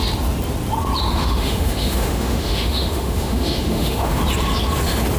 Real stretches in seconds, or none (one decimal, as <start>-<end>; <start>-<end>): 0.0-1.1; 4.2-5.2